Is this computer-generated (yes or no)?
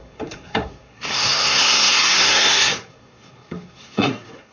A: yes